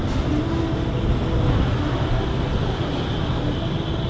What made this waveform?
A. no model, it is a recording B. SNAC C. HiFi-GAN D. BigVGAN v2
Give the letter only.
A